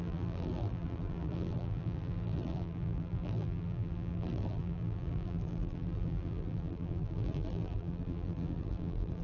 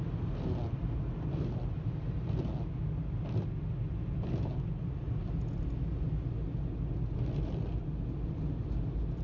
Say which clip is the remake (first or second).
first